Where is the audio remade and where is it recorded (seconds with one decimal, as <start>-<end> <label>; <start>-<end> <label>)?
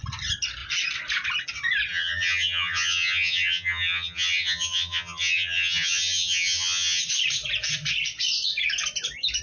0.0-1.9 recorded; 1.9-7.0 remade; 7.0-9.4 recorded